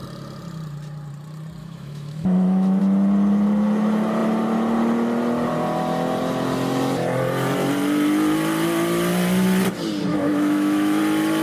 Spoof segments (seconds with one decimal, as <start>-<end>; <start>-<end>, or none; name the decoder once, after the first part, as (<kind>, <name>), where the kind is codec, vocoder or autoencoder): 1.6-2.8 (autoencoder, DAC-VAE); 10.1-11.0